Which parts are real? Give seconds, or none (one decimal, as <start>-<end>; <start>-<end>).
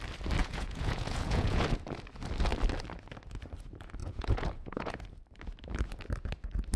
0.0-0.4; 1.6-4.0; 5.0-6.8